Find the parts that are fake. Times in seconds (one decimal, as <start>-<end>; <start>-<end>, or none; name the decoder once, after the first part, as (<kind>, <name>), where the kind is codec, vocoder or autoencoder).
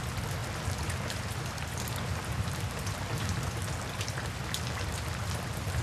none